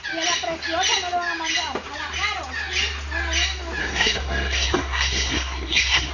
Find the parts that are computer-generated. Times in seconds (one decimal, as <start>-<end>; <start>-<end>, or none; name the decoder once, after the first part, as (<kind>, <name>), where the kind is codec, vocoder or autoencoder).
3.8-6.1 (codec, SNAC)